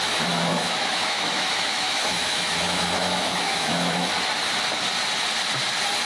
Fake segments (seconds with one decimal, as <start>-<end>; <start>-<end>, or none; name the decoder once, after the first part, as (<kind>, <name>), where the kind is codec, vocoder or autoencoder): 0.5-4.1 (autoencoder, DAC-VAE)